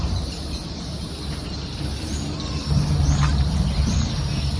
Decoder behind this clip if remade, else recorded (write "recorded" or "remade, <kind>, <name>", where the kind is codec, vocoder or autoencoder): recorded